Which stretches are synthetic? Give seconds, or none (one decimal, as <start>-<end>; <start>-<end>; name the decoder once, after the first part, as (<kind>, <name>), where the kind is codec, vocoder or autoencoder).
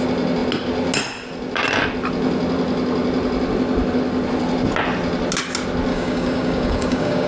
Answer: 5.9-7.3 (codec, DAC)